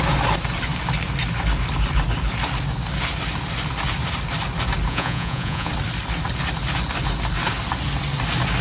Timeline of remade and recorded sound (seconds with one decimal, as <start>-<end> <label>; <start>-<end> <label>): 0.0-4.9 recorded; 4.9-5.7 remade; 5.7-8.6 recorded